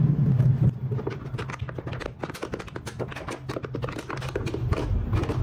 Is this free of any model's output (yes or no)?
yes